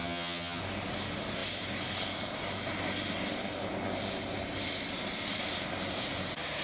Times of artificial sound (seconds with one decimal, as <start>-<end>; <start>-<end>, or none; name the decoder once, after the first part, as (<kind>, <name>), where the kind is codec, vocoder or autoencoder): 0.0-0.6 (vocoder, HiFi-GAN)